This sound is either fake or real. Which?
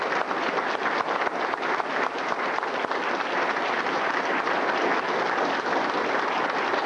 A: real